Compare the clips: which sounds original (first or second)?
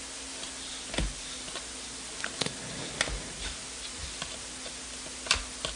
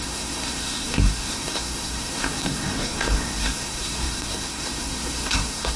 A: first